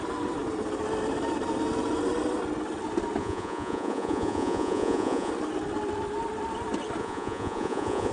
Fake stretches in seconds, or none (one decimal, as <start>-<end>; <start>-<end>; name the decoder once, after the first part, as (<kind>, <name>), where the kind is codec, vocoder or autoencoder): 3.2-5.3 (vocoder, Vocos); 7.0-8.1